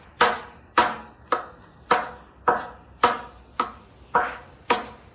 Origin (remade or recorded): recorded